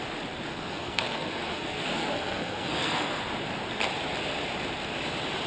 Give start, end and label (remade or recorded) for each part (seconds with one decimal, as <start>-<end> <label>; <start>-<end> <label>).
0.0-0.5 recorded; 0.5-3.2 remade; 3.2-5.5 recorded